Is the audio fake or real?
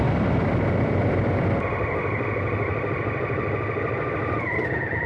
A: real